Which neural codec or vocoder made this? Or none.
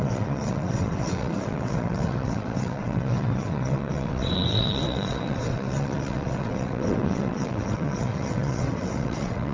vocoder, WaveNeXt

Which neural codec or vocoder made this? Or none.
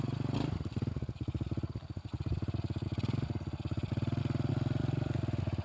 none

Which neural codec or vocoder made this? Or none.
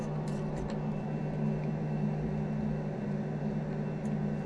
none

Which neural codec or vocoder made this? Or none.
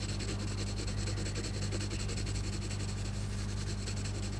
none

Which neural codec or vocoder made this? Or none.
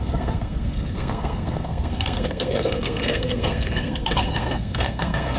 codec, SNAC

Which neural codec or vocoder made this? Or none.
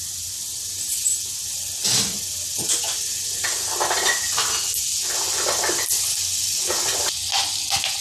none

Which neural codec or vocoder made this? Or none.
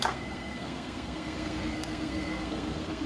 codec, SNAC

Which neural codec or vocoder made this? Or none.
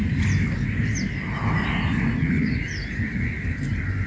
none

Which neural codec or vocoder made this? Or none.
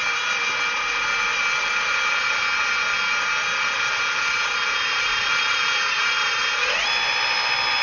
none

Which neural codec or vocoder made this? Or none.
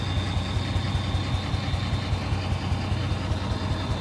none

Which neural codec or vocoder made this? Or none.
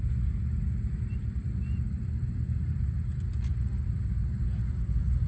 none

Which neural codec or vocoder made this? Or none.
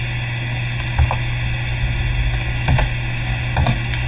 none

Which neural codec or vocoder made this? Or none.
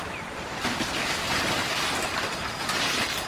none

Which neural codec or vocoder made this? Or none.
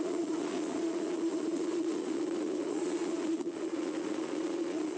vocoder, Vocos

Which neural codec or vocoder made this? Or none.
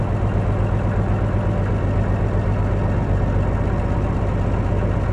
none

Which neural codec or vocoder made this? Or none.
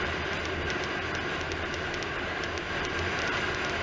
none